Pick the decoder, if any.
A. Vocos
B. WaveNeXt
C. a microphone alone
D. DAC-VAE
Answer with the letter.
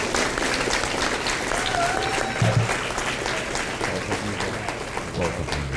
C